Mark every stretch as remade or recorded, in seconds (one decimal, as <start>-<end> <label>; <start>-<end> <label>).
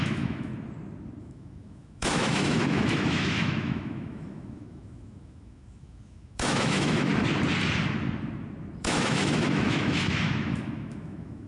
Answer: 0.0-0.5 remade; 0.5-1.2 recorded; 1.2-7.1 remade; 7.1-8.8 recorded; 8.8-11.5 remade